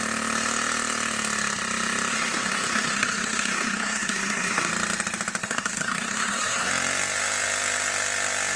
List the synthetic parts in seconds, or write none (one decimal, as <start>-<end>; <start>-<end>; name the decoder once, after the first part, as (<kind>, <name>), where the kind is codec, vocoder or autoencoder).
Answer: 2.1-4.7 (codec, SNAC); 5.4-6.7

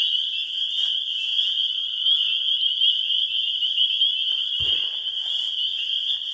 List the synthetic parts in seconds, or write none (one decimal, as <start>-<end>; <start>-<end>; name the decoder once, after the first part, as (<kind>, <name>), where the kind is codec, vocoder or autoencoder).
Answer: none

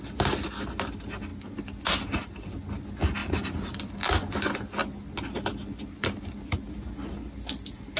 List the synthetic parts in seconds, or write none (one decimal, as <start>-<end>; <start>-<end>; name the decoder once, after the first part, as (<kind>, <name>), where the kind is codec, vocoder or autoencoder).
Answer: 3.2-3.8 (vocoder, BigVGAN v2)